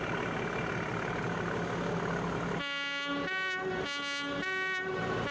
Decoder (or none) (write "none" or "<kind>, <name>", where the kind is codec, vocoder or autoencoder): none